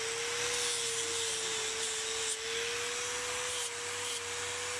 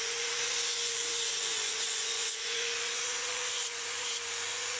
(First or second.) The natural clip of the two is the first